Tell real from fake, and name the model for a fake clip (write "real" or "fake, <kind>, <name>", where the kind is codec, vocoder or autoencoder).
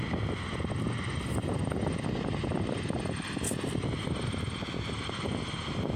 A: real